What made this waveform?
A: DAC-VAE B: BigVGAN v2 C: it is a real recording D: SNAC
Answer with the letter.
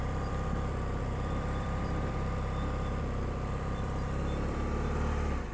B